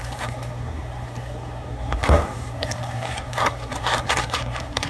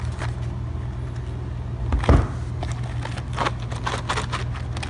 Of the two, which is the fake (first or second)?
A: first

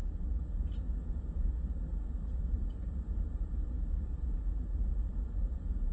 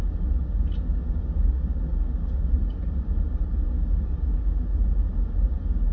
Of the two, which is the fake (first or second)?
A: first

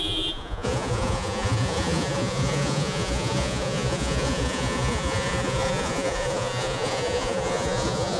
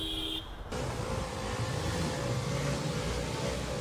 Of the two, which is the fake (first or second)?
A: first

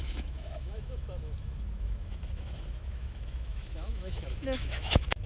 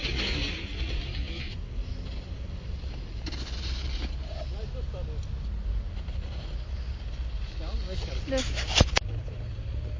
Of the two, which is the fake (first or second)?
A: first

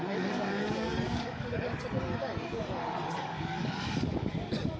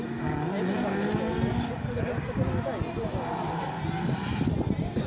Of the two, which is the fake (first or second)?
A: first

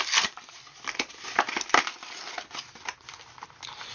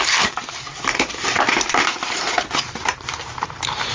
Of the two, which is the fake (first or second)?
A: second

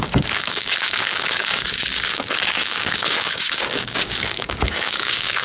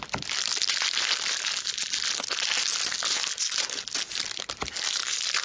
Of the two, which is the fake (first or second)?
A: first